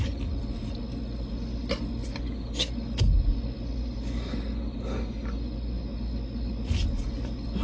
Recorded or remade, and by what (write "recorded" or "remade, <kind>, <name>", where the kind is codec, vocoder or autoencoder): recorded